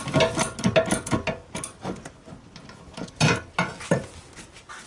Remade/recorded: recorded